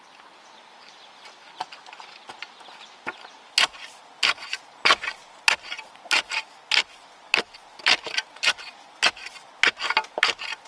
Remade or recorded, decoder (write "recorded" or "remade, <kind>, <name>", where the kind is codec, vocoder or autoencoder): recorded